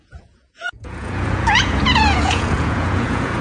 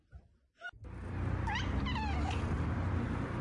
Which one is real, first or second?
second